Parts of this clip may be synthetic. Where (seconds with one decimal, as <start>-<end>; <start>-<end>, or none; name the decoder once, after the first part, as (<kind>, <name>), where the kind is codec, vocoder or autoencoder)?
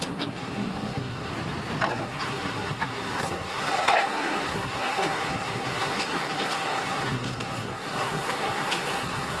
0.0-1.3 (codec, SNAC); 1.9-9.4